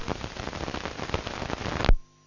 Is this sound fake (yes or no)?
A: no